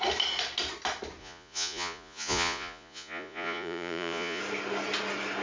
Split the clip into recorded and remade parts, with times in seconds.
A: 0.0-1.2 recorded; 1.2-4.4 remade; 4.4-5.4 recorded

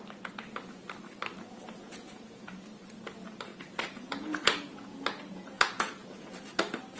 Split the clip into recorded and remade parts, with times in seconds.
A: 0.0-1.8 recorded; 1.8-2.5 remade; 2.5-3.5 recorded; 3.5-6.3 remade; 6.3-7.0 recorded

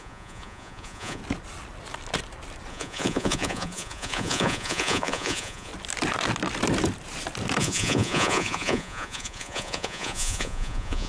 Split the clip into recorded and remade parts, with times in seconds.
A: 0.0-1.2 remade; 1.2-2.7 recorded; 2.7-5.7 remade; 5.7-7.6 recorded; 7.6-11.1 remade